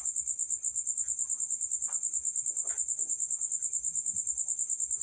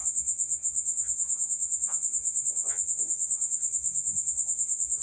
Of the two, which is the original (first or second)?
first